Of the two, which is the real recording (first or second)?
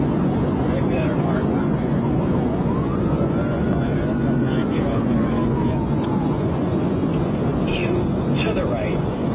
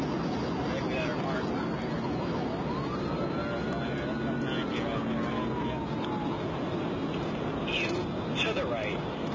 second